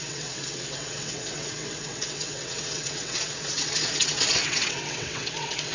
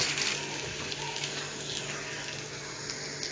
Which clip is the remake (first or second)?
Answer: first